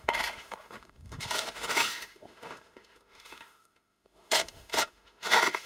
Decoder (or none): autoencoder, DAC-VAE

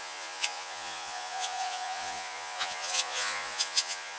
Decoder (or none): vocoder, Vocos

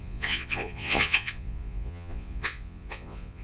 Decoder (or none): vocoder, Vocos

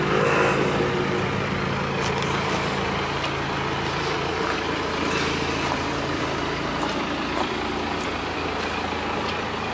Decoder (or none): none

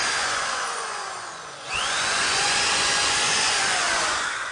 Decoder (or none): vocoder, Vocos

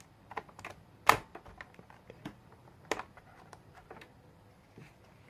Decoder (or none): none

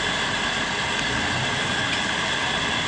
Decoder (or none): none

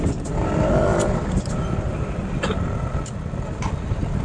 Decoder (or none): none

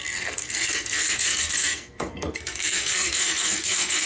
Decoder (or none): codec, SNAC